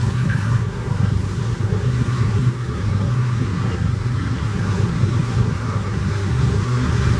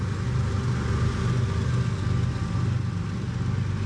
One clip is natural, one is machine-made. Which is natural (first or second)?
second